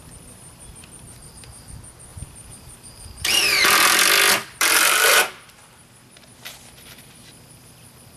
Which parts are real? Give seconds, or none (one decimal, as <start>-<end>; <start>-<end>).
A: 0.0-2.1; 3.4-4.4; 5.8-8.2